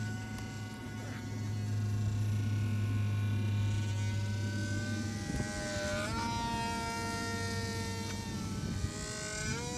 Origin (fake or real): real